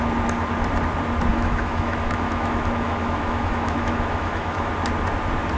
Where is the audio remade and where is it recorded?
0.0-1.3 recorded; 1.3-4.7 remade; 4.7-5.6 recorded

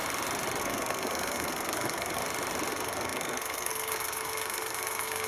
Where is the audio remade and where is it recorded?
0.0-0.6 recorded; 0.6-2.2 remade; 2.2-2.7 recorded; 2.7-5.3 remade